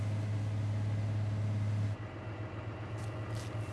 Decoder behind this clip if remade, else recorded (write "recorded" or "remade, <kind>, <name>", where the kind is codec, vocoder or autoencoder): recorded